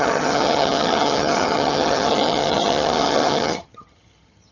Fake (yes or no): yes